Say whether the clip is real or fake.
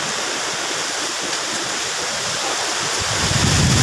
real